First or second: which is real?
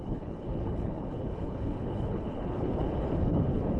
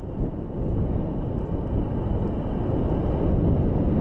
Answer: second